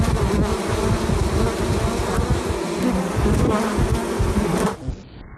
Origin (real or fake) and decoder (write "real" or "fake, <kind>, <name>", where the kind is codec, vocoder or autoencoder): real